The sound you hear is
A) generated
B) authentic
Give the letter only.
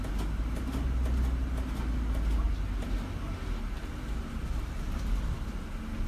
B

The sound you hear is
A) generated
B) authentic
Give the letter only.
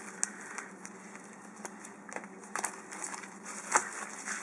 B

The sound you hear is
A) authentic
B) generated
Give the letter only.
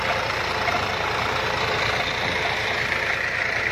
A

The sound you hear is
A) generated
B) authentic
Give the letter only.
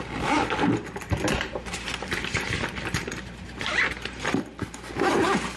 A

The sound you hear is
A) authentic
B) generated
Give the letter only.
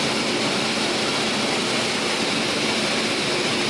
A